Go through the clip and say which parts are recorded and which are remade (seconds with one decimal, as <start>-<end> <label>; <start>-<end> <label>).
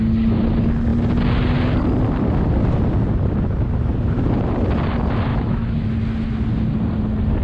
0.0-5.3 recorded; 5.3-5.9 remade; 5.9-7.4 recorded